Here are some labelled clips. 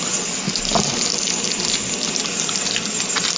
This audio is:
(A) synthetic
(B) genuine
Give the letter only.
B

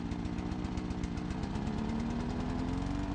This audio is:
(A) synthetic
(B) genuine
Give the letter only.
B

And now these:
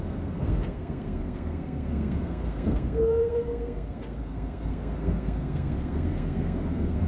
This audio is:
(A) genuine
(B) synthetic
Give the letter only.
B